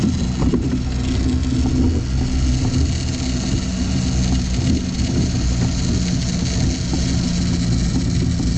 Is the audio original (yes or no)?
yes